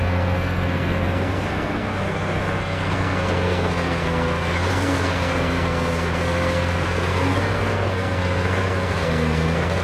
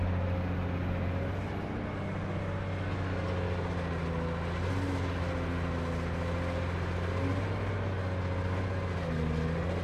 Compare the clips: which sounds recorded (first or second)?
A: second